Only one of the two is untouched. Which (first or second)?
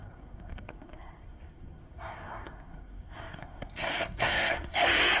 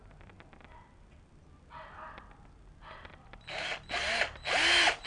second